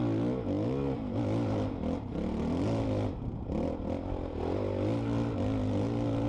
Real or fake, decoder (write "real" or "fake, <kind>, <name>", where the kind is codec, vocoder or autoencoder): real